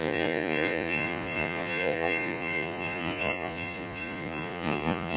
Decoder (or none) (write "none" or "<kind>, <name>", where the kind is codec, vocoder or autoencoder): vocoder, Vocos